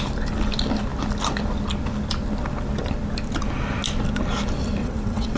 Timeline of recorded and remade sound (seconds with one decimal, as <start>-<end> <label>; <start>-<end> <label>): 0.0-4.8 recorded; 4.8-5.4 remade

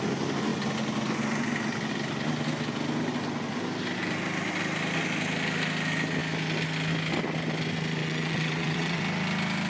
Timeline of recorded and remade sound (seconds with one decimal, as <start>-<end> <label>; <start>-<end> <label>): 0.0-8.0 recorded; 8.0-9.0 remade; 9.0-9.7 recorded